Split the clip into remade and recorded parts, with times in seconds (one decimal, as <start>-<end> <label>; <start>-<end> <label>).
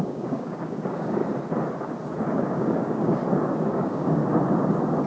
0.0-1.2 remade; 1.2-2.2 recorded; 2.2-3.2 remade; 3.2-3.7 recorded; 3.7-4.2 remade; 4.2-5.1 recorded